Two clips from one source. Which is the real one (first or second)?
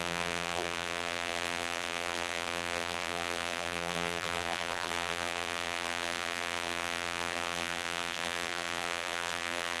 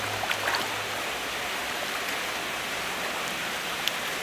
second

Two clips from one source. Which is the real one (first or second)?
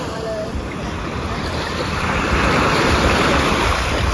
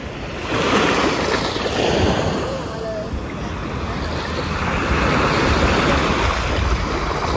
second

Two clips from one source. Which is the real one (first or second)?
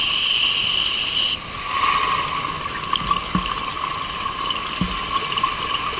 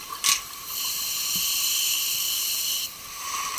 first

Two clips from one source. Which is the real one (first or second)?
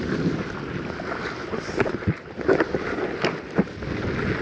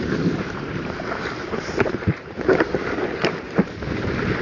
first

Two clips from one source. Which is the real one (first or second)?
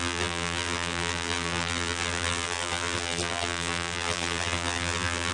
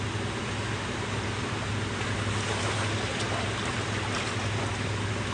second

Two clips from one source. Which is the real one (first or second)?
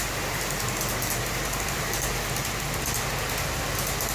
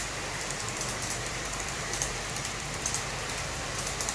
first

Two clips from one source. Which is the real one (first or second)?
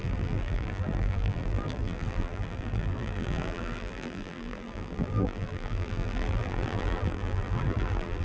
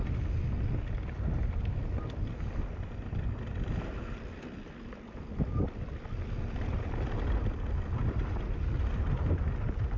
second